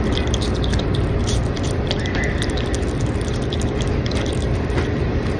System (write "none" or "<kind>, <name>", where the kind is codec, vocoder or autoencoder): none